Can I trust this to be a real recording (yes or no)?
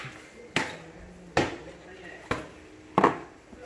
yes